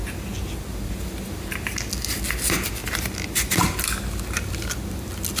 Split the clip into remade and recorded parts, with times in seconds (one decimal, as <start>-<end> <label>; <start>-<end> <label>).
0.0-5.4 recorded